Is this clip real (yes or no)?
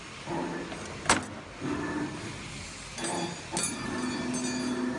yes